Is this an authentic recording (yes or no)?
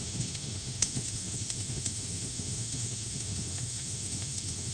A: no